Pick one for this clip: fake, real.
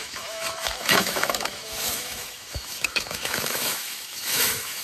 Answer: fake